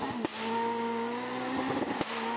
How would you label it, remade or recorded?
recorded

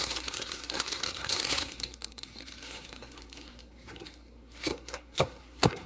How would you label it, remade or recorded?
remade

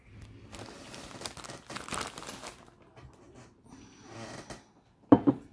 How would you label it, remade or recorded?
recorded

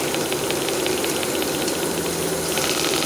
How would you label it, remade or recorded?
recorded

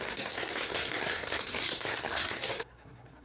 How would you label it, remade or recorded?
remade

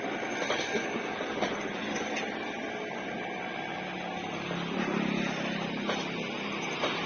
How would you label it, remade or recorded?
recorded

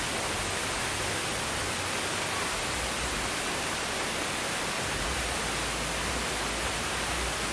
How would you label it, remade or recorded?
recorded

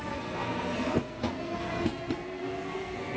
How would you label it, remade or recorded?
remade